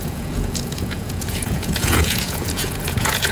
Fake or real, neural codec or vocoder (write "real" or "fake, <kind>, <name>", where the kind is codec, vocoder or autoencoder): fake, vocoder, Vocos